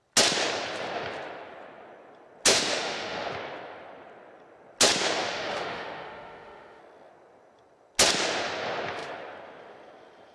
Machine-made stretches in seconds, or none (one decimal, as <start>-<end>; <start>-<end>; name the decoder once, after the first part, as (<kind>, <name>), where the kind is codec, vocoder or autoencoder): 2.5-3.3 (autoencoder, DAC-VAE); 5.2-6.8